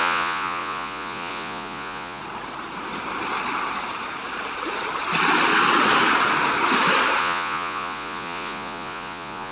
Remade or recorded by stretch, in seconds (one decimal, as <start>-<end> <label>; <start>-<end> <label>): 0.0-2.2 remade; 2.2-7.2 recorded; 7.2-9.5 remade